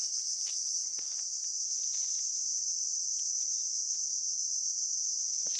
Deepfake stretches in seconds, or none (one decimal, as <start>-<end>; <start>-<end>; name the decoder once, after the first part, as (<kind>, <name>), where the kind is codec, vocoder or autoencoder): none